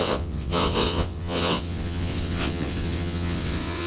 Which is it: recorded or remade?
remade